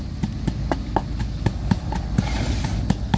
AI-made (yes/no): no